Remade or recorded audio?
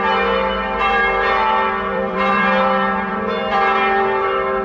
remade